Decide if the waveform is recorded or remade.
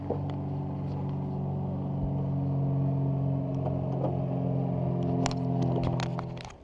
recorded